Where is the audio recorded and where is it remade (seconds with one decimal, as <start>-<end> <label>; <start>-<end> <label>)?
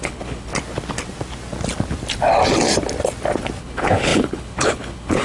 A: 0.0-0.5 remade; 0.5-3.6 recorded; 3.6-5.2 remade